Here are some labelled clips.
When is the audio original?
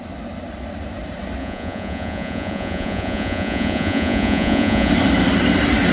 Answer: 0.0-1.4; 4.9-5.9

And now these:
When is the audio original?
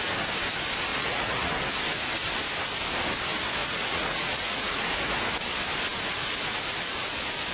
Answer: 0.0-0.9; 1.5-3.6; 4.8-7.5